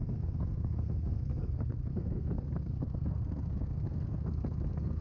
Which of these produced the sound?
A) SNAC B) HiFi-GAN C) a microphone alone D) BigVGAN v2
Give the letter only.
A